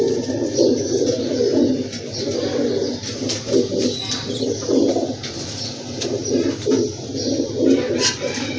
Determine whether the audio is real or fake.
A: real